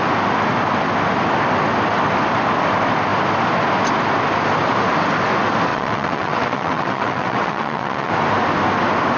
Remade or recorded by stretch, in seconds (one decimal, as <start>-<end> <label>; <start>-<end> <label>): 0.0-5.7 recorded; 5.7-8.1 remade; 8.1-9.2 recorded

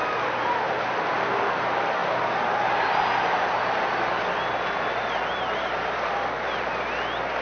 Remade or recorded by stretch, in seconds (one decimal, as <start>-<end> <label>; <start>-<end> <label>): 0.0-7.4 recorded